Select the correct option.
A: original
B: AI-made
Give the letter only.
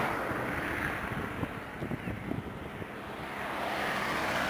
A